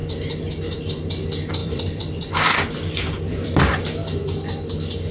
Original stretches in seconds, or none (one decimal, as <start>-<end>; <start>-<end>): 0.0-1.6; 3.6-5.1